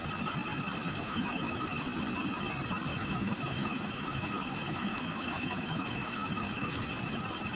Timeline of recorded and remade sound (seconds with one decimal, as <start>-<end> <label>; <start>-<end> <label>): 0.0-0.9 recorded; 0.9-1.5 remade; 1.5-2.9 recorded; 2.9-6.8 remade; 6.8-7.5 recorded